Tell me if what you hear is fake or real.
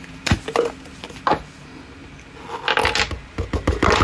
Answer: real